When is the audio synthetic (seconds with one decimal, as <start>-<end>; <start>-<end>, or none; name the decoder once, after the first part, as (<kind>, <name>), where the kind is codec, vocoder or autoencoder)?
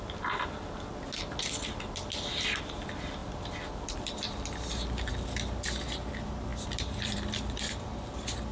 3.2-5.1 (vocoder, BigVGAN v2); 6.5-8.5